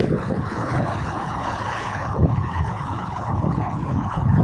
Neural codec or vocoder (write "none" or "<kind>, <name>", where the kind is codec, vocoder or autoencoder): codec, HILCodec